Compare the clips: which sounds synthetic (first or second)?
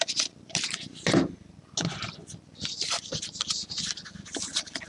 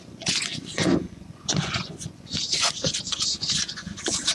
second